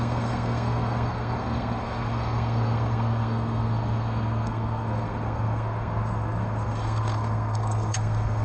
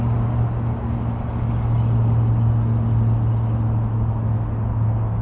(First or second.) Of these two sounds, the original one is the second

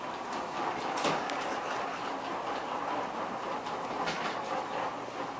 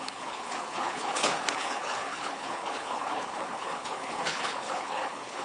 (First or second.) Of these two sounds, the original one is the first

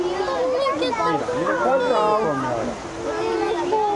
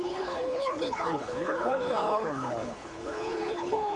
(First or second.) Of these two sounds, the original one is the first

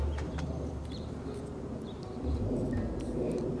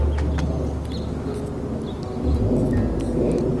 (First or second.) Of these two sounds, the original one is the second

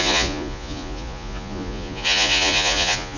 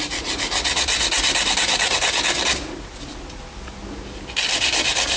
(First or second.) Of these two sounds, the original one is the second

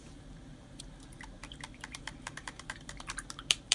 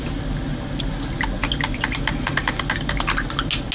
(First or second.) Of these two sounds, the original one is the second